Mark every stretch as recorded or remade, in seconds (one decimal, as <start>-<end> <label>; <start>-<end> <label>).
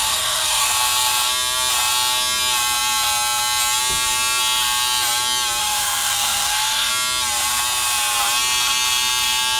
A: 0.0-0.7 remade; 0.7-5.6 recorded; 5.6-6.9 remade; 6.9-9.6 recorded